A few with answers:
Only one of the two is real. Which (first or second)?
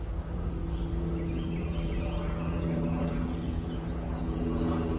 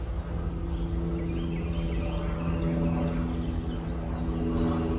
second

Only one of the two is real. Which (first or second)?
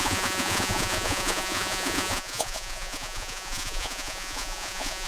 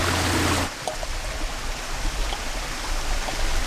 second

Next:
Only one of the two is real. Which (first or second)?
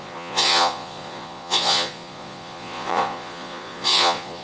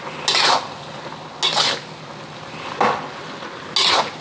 second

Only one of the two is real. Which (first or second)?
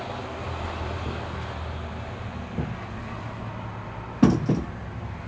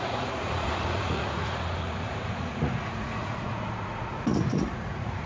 first